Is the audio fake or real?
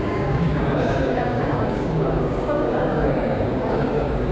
fake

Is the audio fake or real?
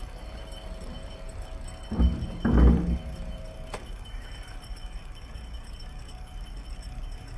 fake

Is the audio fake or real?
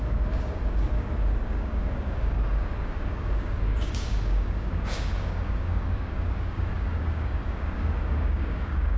fake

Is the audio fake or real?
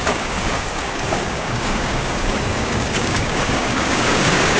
fake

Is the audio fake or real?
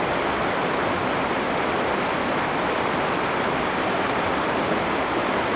real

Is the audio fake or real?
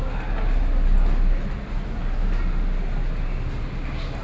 real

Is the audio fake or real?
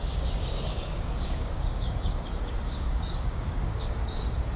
fake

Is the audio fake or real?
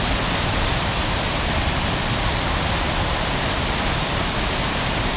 real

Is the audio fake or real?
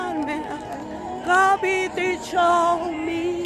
real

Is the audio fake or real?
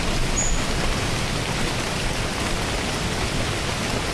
real